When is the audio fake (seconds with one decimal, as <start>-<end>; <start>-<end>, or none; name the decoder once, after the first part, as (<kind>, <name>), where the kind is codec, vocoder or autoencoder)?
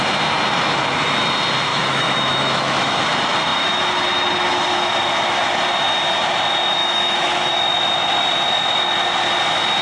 1.7-3.0 (autoencoder, DAC-VAE); 6.8-7.5